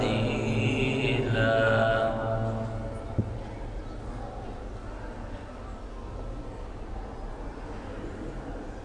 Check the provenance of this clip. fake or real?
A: real